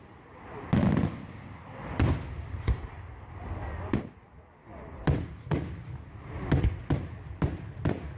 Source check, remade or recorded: recorded